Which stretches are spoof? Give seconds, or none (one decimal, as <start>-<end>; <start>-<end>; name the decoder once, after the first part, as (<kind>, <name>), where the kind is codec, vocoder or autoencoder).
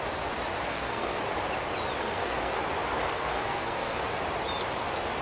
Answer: 0.7-1.2 (codec, SNAC); 2.0-2.6; 3.0-4.0